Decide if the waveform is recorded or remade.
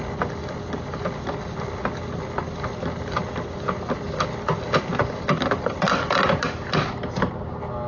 recorded